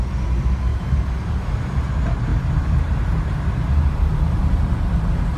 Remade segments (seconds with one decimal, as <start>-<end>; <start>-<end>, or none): 0.7-1.5; 2.3-4.4